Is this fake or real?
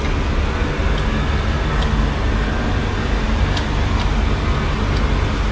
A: real